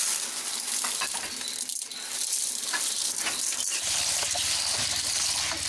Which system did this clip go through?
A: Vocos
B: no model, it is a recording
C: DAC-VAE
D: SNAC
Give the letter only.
B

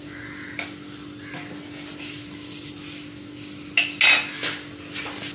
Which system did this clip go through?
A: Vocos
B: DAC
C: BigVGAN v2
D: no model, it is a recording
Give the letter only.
D